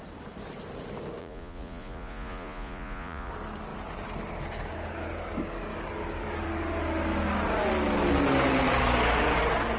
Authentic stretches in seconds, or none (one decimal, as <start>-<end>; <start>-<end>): 0.0-1.2; 3.3-9.8

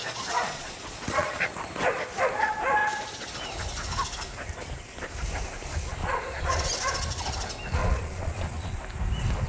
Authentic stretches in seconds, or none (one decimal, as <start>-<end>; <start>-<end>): 1.5-6.0; 6.7-7.8; 8.8-9.5

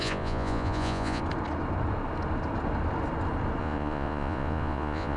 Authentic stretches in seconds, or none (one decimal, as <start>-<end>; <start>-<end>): 1.2-3.6

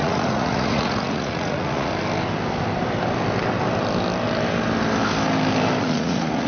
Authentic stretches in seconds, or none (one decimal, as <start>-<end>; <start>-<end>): 1.9-5.8